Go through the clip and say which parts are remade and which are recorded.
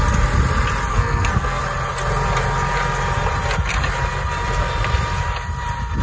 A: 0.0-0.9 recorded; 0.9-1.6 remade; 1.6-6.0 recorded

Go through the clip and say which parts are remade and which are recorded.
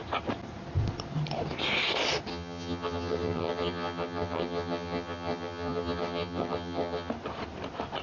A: 0.0-2.3 recorded; 2.3-7.1 remade; 7.1-8.0 recorded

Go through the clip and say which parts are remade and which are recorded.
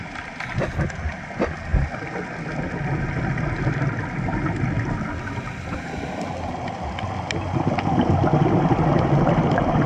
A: 0.0-9.9 recorded